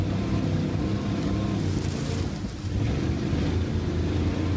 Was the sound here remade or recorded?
recorded